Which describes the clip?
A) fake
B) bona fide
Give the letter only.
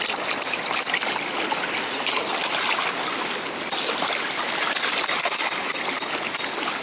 B